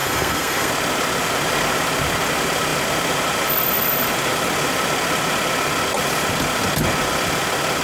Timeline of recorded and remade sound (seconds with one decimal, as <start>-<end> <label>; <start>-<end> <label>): 0.0-0.7 remade; 0.7-7.8 recorded